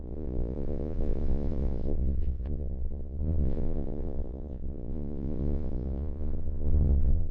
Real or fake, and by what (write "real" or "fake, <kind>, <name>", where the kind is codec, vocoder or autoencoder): fake, vocoder, Vocos